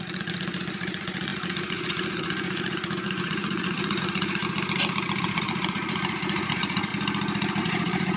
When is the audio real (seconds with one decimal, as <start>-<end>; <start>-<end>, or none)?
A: 4.4-5.2; 6.9-7.6